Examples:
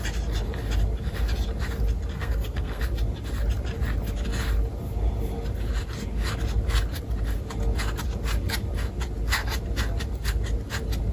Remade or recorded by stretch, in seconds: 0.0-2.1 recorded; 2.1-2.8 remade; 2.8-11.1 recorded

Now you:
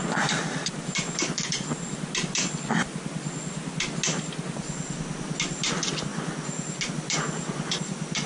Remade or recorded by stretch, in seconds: 0.0-8.3 recorded

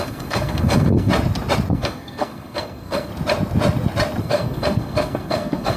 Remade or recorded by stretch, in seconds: 0.0-1.1 remade; 1.1-1.7 recorded; 1.7-3.1 remade; 3.1-4.2 recorded; 4.2-5.8 remade